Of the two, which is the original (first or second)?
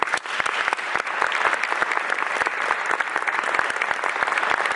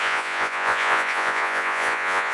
first